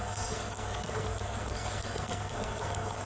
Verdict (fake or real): fake